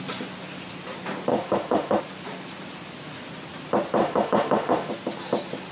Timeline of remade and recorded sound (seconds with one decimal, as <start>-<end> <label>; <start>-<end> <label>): 0.0-1.3 recorded; 1.3-2.0 remade; 2.0-4.0 recorded; 4.0-4.9 remade; 4.9-5.7 recorded